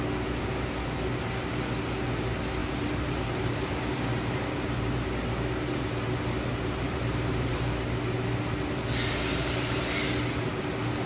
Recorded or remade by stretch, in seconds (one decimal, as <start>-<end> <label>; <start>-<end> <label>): 0.0-2.6 recorded; 2.6-4.9 remade; 4.9-6.5 recorded; 6.5-7.6 remade; 7.6-9.3 recorded; 9.3-9.8 remade; 9.8-11.1 recorded